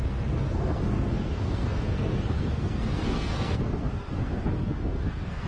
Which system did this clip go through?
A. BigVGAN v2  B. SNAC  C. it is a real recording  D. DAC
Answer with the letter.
B